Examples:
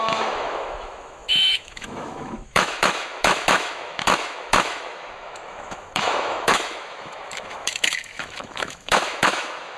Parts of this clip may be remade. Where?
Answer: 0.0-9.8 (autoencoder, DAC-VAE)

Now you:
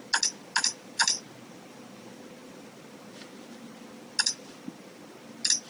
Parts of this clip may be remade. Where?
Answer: none

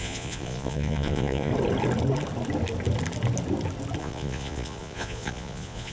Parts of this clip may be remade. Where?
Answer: 0.0-1.5 (vocoder, Vocos); 4.0-5.9

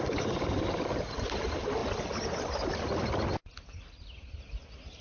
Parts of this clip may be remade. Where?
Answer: none

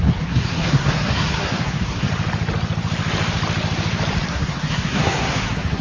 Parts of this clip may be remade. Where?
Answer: 0.0-2.1 (codec, SNAC); 4.3-5.8

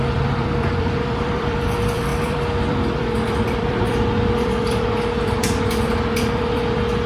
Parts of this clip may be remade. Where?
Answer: 0.0-7.1 (vocoder, BigVGAN v2)